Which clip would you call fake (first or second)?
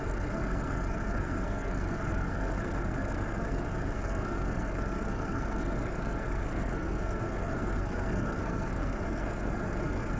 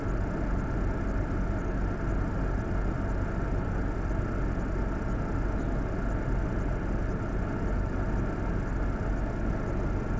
first